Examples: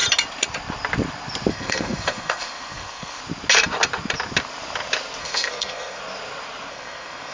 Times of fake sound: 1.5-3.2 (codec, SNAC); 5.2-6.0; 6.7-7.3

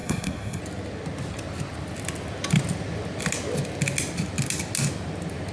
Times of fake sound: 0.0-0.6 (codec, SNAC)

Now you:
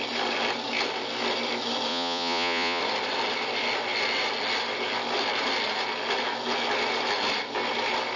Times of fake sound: 1.9-2.8 (vocoder, Vocos)